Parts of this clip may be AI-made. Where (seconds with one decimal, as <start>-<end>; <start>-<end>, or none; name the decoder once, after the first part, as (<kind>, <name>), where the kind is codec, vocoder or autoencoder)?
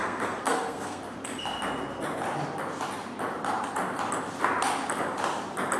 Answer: 0.0-1.0 (codec, SNAC)